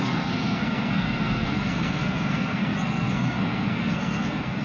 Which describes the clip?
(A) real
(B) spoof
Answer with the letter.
B